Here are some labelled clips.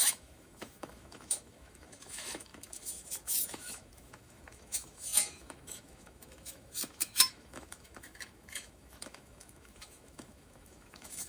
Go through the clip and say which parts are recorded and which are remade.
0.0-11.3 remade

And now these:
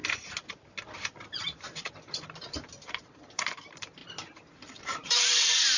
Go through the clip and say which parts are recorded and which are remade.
0.0-1.4 recorded; 1.4-4.0 remade; 4.0-4.5 recorded; 4.5-5.8 remade